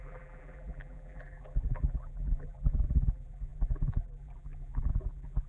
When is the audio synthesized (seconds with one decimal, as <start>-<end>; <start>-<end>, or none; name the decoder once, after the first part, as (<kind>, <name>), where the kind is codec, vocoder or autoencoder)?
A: 0.0-5.5 (vocoder, BigVGAN v2)